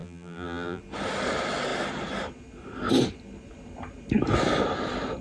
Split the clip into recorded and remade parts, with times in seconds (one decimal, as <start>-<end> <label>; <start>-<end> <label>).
0.0-0.8 remade; 0.8-5.2 recorded